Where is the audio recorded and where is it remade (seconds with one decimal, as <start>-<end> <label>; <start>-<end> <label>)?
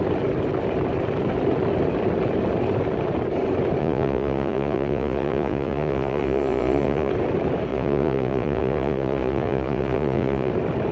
0.0-3.8 recorded; 3.8-7.1 remade; 7.1-7.7 recorded; 7.7-10.5 remade; 10.5-10.9 recorded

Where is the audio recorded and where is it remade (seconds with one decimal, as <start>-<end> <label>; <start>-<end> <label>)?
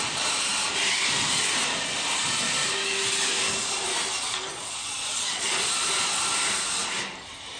0.0-4.5 recorded; 4.5-6.2 remade; 6.2-7.6 recorded